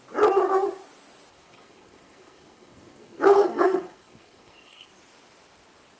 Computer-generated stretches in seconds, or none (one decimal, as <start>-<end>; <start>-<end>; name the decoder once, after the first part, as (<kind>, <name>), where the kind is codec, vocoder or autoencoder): 1.3-4.9 (codec, SNAC)